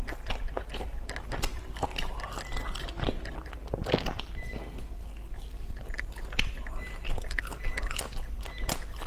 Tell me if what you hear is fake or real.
real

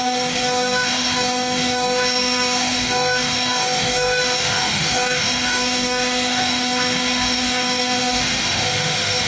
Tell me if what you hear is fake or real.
fake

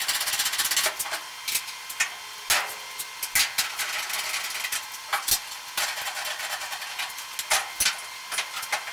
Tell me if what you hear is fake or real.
real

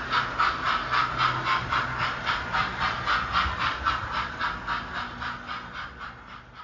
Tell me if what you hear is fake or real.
real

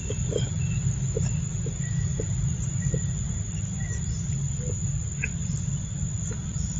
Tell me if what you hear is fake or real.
real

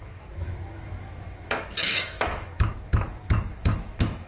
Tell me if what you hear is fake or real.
fake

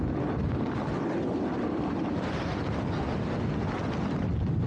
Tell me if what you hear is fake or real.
real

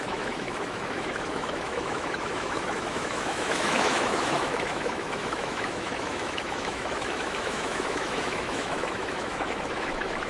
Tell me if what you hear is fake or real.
fake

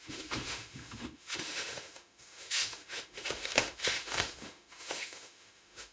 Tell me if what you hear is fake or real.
fake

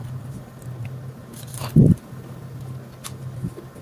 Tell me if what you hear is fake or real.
real